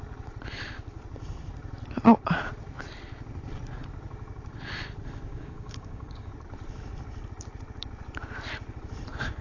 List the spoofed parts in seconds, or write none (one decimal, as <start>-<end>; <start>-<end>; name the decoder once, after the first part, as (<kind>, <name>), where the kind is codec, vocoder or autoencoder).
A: 5.3-6.3 (codec, DAC)